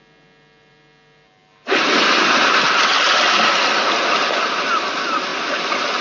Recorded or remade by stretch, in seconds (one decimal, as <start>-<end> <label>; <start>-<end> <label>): 0.0-6.0 recorded

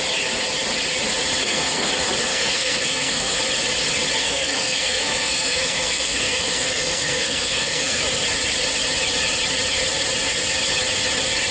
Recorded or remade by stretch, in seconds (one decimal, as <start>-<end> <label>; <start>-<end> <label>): 0.0-1.4 recorded; 1.4-1.9 remade; 1.9-2.3 recorded; 2.3-3.4 remade; 3.4-4.2 recorded; 4.2-8.0 remade; 8.0-11.5 recorded

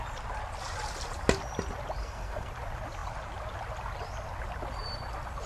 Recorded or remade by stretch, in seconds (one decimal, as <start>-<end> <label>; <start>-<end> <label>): 0.0-2.0 recorded; 2.0-2.5 remade; 2.5-5.5 recorded

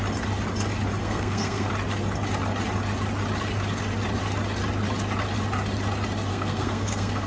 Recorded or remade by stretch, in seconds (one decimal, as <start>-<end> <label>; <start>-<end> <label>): 0.0-1.0 recorded; 1.0-1.7 remade; 1.7-6.3 recorded; 6.3-7.3 remade

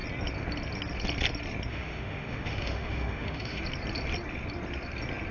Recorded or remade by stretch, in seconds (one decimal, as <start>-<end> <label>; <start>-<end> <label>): 0.0-1.7 recorded; 1.7-3.6 remade; 3.6-5.3 recorded

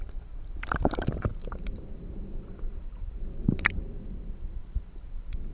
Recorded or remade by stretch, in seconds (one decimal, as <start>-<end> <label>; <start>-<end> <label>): 0.0-1.3 recorded; 1.3-4.6 remade; 4.6-5.5 recorded